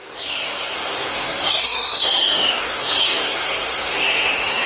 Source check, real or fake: fake